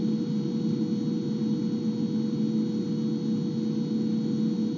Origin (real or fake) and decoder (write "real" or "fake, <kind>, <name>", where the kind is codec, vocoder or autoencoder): real